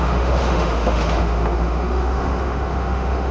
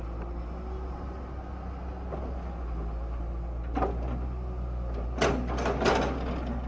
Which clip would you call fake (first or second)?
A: first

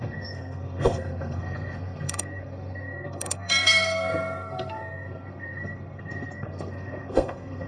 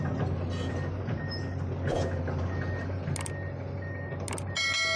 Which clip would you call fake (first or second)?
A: first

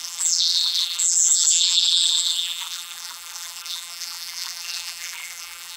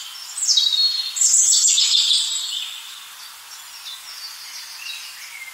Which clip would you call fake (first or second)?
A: first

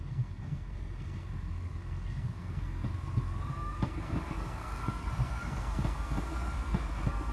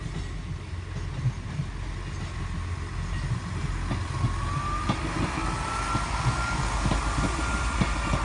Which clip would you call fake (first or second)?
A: first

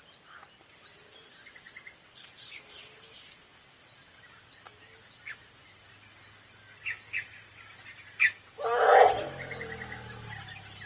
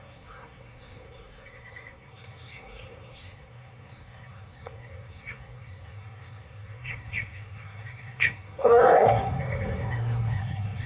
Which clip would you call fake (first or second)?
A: second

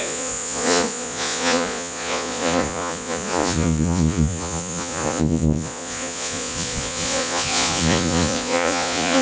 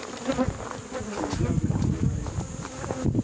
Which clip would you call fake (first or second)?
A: first